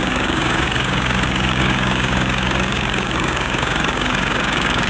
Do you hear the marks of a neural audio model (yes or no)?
yes